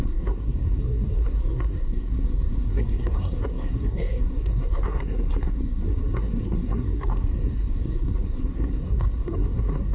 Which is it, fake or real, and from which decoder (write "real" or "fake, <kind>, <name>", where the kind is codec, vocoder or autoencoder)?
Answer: fake, codec, SNAC